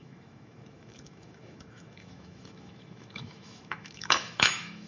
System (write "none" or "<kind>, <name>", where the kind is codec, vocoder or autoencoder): autoencoder, DAC-VAE